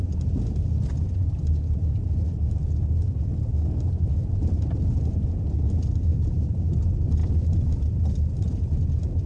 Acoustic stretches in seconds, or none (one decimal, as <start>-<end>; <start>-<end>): 0.0-6.1; 6.7-9.3